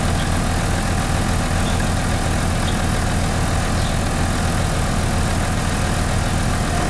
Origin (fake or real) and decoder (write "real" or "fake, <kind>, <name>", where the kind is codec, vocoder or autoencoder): real